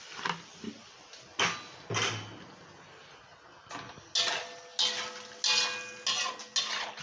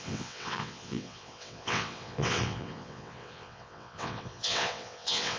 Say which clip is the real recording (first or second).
first